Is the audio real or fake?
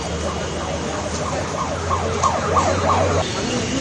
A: real